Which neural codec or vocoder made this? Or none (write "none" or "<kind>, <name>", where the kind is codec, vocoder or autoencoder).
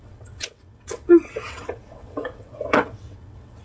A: vocoder, WaveNeXt